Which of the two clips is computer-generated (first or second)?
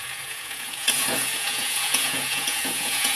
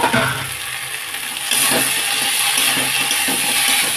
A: first